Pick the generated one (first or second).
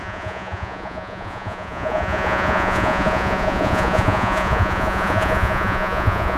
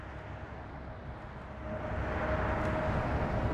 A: first